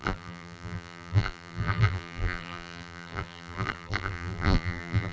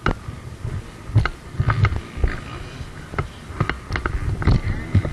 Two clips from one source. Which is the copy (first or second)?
first